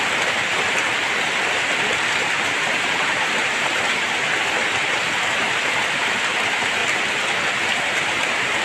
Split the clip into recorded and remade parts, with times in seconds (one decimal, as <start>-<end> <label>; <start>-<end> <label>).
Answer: 0.0-6.8 remade; 6.8-7.8 recorded; 7.8-8.6 remade